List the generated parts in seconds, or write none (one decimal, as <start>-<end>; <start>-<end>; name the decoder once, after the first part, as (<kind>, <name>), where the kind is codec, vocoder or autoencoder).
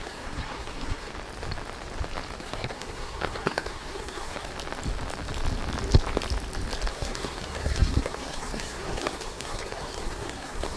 0.0-1.1 (codec, SNAC); 2.4-4.5; 6.9-10.8